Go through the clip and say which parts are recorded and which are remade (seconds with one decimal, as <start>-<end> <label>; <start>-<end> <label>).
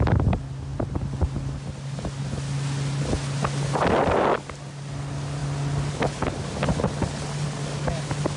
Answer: 0.0-8.4 recorded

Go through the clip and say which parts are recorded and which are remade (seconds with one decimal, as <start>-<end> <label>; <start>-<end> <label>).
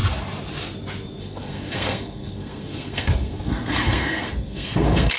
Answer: 0.0-1.2 recorded; 1.2-5.2 remade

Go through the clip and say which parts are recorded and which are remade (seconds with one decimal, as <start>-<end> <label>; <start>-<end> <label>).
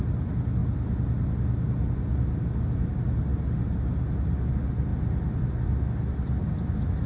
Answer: 0.0-7.1 recorded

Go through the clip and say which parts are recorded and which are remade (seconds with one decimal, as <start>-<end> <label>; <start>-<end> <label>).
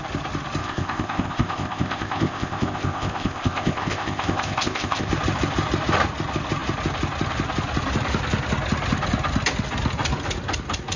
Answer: 0.0-0.6 recorded; 0.6-5.1 remade; 5.1-11.0 recorded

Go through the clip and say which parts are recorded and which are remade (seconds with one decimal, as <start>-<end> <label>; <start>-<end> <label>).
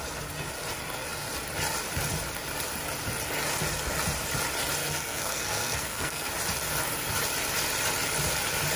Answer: 0.0-4.8 recorded; 4.8-6.3 remade; 6.3-8.8 recorded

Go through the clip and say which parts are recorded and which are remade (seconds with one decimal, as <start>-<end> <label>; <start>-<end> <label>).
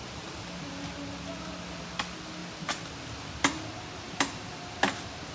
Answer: 0.0-5.3 recorded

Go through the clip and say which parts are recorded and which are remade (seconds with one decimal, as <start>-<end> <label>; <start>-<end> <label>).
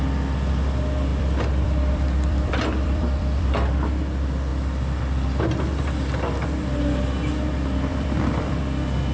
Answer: 0.0-1.1 recorded; 1.1-3.9 remade; 3.9-7.9 recorded; 7.9-8.6 remade; 8.6-9.1 recorded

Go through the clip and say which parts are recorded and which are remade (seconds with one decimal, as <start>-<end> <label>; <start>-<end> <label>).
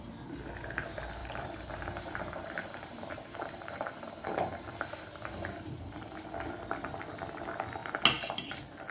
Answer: 0.0-1.2 recorded; 1.2-6.5 remade; 6.5-8.9 recorded